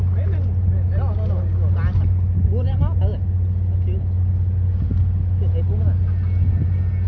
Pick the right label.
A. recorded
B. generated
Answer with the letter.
A